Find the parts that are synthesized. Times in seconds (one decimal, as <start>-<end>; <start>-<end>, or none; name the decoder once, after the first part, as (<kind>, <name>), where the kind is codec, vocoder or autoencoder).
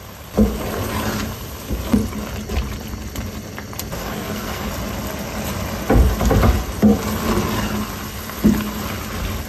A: 4.0-4.7 (codec, SNAC)